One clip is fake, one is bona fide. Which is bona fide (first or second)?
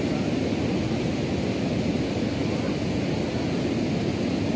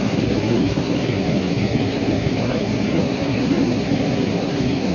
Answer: first